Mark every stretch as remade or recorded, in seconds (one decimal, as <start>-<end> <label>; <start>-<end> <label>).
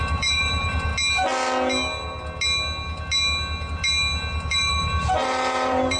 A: 0.0-0.9 remade; 0.9-4.5 recorded; 4.5-6.0 remade